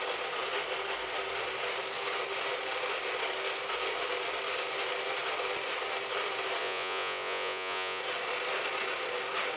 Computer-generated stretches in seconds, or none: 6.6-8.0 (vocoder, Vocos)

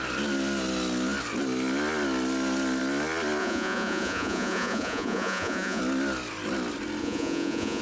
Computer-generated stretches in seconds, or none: 3.4-5.8 (vocoder, Vocos); 7.0-7.8

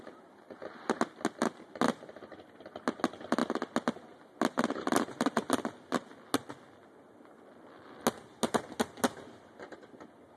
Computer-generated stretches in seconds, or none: none